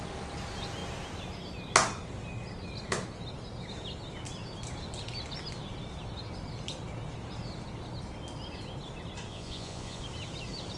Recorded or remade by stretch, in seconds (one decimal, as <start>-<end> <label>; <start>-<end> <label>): 0.0-9.3 recorded; 9.3-10.0 remade; 10.0-10.8 recorded